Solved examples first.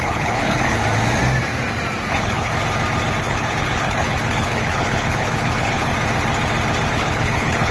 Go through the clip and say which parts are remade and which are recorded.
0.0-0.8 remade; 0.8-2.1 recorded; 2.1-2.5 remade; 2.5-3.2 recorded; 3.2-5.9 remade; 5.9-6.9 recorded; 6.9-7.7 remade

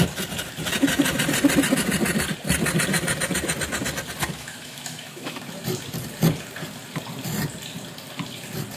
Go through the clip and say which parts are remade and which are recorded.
0.0-4.2 recorded; 4.2-5.4 remade; 5.4-8.8 recorded

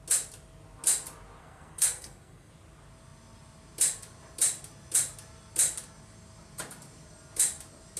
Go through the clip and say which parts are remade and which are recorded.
0.0-1.4 recorded; 1.4-2.5 remade; 2.5-8.0 recorded

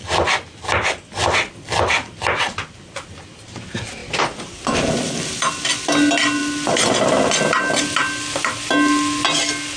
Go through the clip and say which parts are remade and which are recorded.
0.0-9.8 recorded

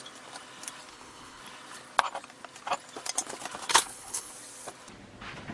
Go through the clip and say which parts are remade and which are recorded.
0.0-0.9 recorded; 0.9-1.4 remade; 1.4-3.7 recorded; 3.7-4.3 remade; 4.3-5.5 recorded

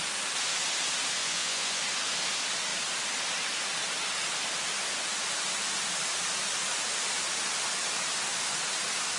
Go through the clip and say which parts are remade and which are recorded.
0.0-1.2 recorded; 1.2-1.8 remade; 1.8-9.2 recorded